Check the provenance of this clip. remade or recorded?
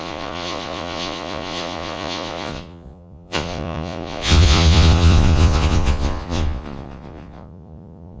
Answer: remade